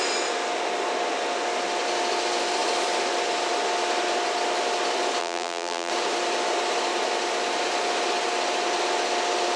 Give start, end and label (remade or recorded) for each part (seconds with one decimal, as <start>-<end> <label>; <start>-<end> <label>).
0.0-5.2 recorded; 5.2-5.9 remade; 5.9-9.6 recorded